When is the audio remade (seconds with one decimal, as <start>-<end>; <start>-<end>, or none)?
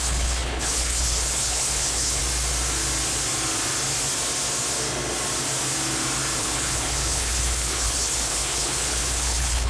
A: 0.0-2.2; 6.4-9.7